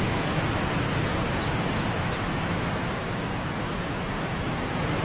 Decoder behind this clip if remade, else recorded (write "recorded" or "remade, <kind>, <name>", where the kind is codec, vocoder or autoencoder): recorded